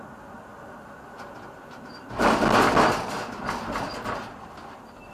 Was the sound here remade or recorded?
recorded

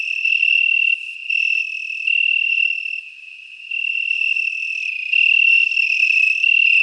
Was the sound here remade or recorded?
recorded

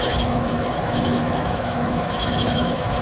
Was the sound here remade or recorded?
remade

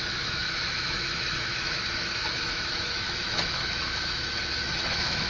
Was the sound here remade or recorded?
remade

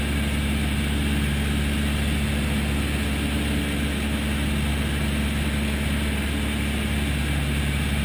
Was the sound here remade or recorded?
recorded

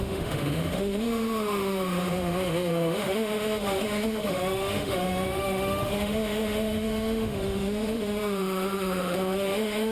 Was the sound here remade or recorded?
remade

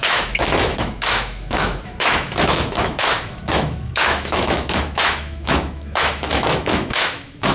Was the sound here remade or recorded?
remade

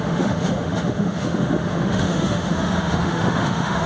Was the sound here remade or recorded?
remade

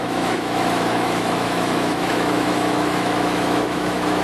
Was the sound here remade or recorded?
remade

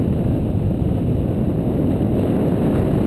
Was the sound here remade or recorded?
recorded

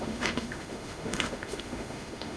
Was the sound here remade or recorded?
remade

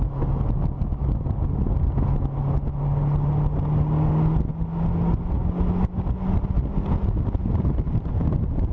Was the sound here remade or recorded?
recorded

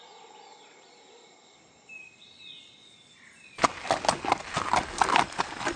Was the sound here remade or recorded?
recorded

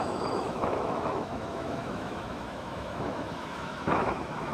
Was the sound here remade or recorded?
remade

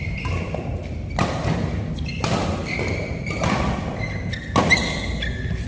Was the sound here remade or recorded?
recorded